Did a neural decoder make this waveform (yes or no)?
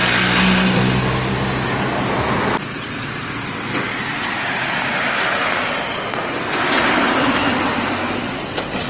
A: no